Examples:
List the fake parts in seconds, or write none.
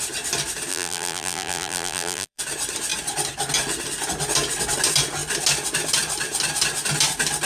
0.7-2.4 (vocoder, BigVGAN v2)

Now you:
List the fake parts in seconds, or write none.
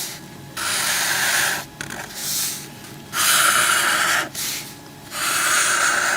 none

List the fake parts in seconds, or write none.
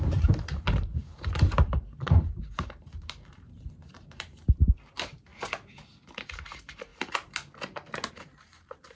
0.0-5.3 (vocoder, BigVGAN v2); 6.2-6.9; 8.1-9.0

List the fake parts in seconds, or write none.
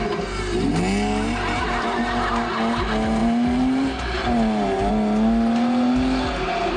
3.2-4.9 (vocoder, BigVGAN v2)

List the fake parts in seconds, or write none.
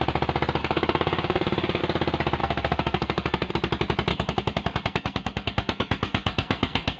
0.6-1.8 (codec, SNAC); 2.4-3.5; 4.1-7.0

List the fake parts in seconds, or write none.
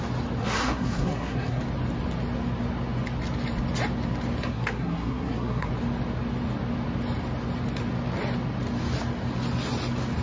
0.4-1.6 (codec, SNAC); 4.5-5.7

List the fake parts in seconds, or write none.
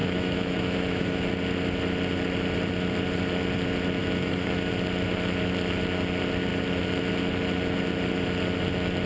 0.0-1.3 (autoencoder, DAC-VAE); 4.0-4.7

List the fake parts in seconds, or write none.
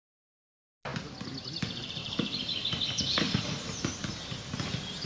none